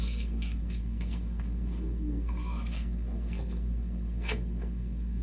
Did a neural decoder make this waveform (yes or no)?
yes